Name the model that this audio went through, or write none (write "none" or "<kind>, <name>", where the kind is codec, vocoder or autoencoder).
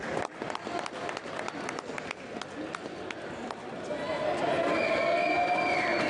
none